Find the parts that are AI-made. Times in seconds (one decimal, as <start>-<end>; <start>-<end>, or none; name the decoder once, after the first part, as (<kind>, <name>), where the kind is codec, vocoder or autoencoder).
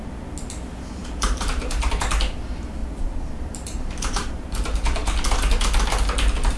1.0-1.9 (vocoder, BigVGAN v2); 2.8-5.1